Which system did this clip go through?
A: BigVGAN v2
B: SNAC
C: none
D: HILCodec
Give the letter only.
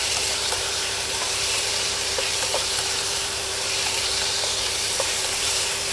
A